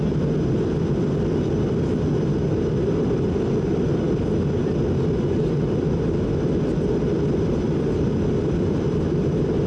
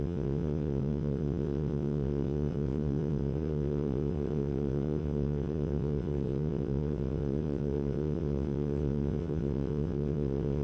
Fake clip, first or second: second